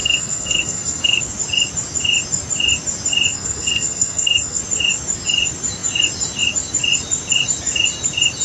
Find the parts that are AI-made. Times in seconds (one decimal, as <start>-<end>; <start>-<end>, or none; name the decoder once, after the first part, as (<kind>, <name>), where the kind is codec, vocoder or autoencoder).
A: 0.0-1.2 (codec, SNAC); 3.3-4.6